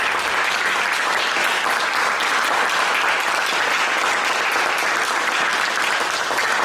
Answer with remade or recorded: recorded